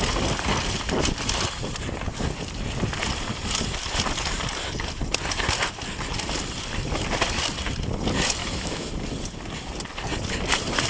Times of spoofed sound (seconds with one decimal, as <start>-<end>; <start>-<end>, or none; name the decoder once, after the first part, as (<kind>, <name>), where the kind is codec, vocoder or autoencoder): 8.4-8.9 (autoencoder, DAC-VAE)